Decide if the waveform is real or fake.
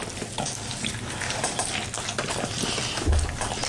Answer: real